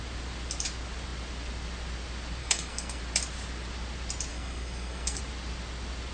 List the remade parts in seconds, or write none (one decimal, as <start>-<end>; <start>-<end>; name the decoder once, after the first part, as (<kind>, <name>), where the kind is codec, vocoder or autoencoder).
2.4-3.0 (codec, SNAC); 4.3-5.2